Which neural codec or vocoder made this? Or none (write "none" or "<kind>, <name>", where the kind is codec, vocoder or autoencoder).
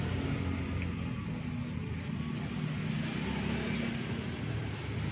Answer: none